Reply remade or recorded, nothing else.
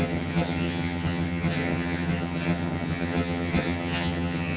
remade